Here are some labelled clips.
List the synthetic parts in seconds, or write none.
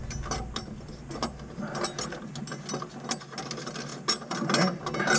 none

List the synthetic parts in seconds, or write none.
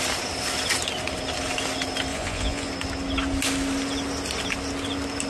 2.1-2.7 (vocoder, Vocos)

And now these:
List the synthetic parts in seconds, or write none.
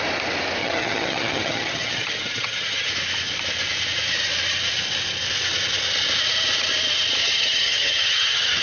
0.6-2.9 (vocoder, HiFi-GAN); 7.2-8.6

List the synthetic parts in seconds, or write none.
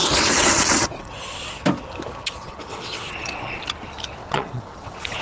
0.0-1.5 (vocoder, WaveNeXt); 2.4-3.6; 4.2-5.2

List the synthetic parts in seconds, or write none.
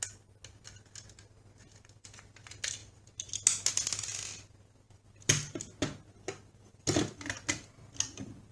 none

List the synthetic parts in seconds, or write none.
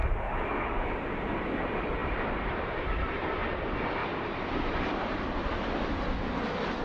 2.0-3.4 (vocoder, BigVGAN v2); 4.0-5.0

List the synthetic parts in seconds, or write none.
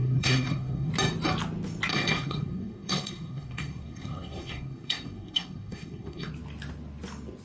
0.0-0.9 (codec, SNAC); 1.9-6.3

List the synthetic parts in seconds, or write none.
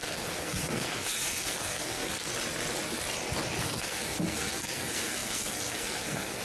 0.0-2.3 (codec, SNAC); 3.6-6.4